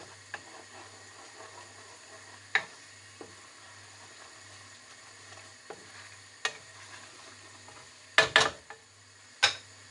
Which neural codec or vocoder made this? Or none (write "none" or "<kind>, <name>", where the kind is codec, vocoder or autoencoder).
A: none